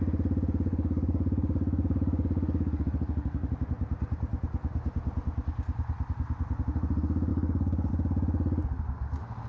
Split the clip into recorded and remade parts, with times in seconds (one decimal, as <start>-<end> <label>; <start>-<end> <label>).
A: 0.0-0.7 recorded; 0.7-3.5 remade; 3.5-7.3 recorded; 7.3-7.9 remade; 7.9-9.5 recorded